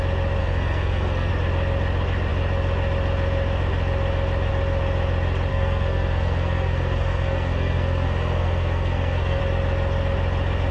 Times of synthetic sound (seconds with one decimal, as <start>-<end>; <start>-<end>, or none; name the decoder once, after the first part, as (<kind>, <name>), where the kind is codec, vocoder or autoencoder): 0.4-1.3 (codec, SNAC); 5.5-9.4